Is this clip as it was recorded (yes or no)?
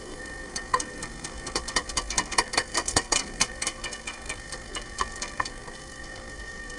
no